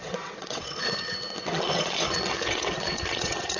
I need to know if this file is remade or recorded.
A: remade